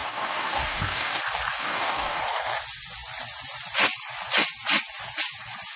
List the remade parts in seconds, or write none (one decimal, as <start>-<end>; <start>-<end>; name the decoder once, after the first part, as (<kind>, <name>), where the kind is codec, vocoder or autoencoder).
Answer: 0.0-1.2 (codec, DAC); 1.6-2.2